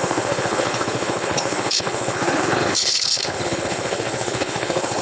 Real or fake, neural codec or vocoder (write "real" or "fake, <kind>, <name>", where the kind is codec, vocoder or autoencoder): fake, codec, HILCodec